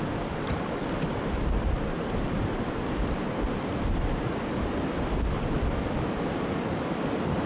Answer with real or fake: real